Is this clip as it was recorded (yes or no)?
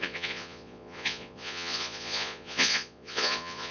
no